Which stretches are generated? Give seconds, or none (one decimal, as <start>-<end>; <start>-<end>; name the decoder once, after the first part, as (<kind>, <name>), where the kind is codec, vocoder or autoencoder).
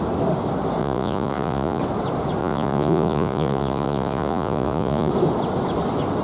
0.8-1.8 (vocoder, Vocos); 2.4-5.1